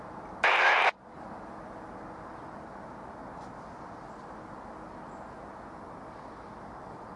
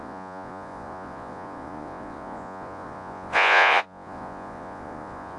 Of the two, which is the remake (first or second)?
second